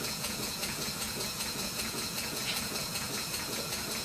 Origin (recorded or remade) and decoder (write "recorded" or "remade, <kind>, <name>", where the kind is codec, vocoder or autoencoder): remade, vocoder, Vocos